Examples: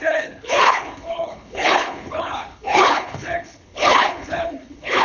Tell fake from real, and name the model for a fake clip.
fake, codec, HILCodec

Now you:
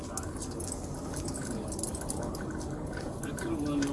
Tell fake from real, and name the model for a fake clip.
real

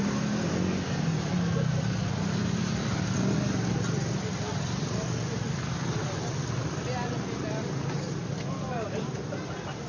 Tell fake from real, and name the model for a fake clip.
real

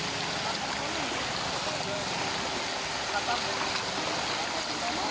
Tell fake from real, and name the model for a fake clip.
real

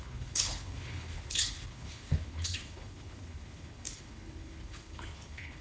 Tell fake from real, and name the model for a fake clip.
fake, codec, HILCodec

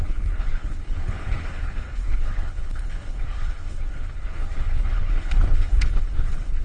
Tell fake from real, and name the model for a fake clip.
fake, codec, HILCodec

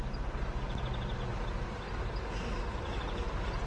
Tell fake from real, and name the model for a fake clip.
real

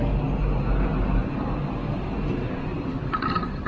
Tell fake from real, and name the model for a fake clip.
real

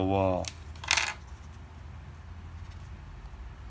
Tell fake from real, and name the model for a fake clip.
real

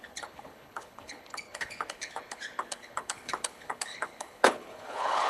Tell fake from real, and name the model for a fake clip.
fake, codec, HILCodec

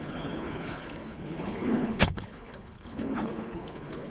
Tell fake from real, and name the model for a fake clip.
fake, codec, HILCodec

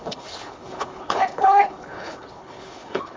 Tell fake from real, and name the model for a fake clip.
fake, codec, HILCodec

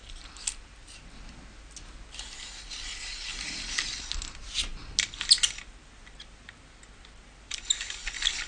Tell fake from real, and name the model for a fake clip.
real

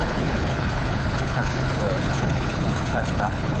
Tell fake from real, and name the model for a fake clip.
fake, codec, HILCodec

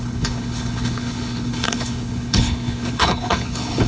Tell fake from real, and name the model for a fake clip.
fake, codec, HILCodec